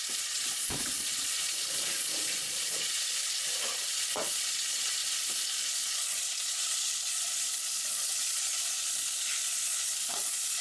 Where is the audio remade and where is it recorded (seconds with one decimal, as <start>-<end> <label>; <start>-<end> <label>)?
0.0-10.6 remade